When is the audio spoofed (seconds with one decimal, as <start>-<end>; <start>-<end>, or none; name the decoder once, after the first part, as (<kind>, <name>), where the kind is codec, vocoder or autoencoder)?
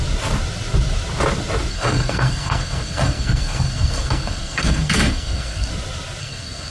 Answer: 1.7-5.7 (codec, SNAC); 6.2-6.7